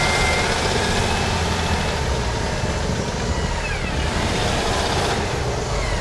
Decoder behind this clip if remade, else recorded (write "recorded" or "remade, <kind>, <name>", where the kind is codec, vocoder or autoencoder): recorded